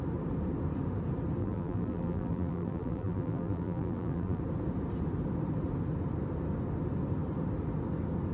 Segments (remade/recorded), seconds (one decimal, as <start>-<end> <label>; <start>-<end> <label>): 0.0-1.4 recorded; 1.4-4.4 remade; 4.4-8.3 recorded

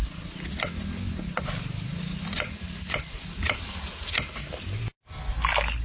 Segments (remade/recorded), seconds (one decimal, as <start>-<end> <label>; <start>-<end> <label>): 0.0-3.3 remade; 3.3-5.8 recorded

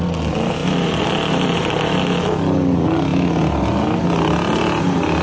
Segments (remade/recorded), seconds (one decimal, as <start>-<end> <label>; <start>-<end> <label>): 0.0-0.6 recorded; 0.6-2.0 remade; 2.0-5.2 recorded

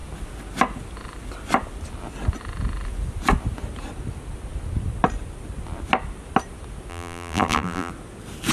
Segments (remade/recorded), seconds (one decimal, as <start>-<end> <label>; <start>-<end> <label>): 0.0-6.9 recorded; 6.9-7.9 remade; 7.9-8.5 recorded

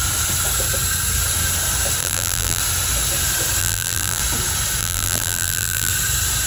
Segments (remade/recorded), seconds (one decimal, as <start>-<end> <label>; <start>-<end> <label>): 0.0-2.0 recorded; 2.0-2.6 remade; 2.6-3.6 recorded; 3.6-4.2 remade; 4.2-4.8 recorded; 4.8-5.9 remade; 5.9-6.5 recorded

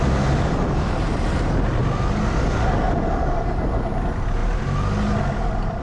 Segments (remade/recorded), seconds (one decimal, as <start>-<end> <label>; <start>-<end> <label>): 0.0-5.8 recorded